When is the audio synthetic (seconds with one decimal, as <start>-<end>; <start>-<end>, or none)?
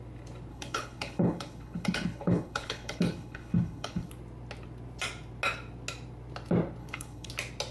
0.5-4.1; 6.8-7.3